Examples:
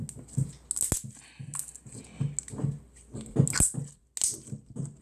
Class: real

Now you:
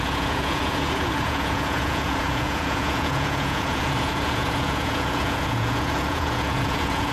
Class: fake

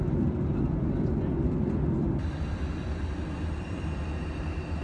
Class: real